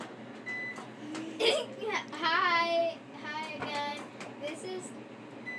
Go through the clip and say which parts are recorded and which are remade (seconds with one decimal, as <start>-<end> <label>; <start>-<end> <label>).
0.0-5.6 recorded